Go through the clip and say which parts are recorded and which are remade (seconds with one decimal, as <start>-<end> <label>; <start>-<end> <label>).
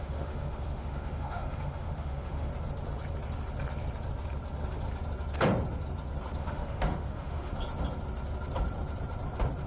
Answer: 0.0-2.5 remade; 2.5-6.4 recorded; 6.4-7.5 remade; 7.5-9.7 recorded